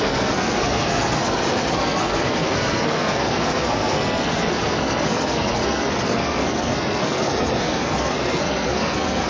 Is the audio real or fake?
fake